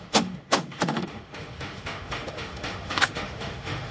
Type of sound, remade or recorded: remade